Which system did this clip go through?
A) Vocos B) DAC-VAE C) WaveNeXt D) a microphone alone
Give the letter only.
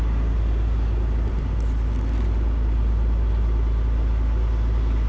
D